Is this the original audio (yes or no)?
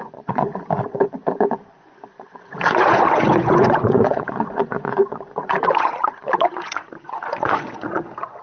no